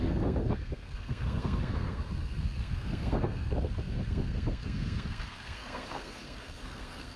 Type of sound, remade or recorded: remade